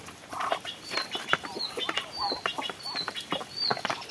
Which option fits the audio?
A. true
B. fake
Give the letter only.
A